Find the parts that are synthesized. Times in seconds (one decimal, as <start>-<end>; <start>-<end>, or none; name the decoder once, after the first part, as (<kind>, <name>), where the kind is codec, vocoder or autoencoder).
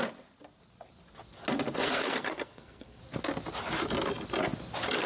1.8-3.0 (codec, SNAC)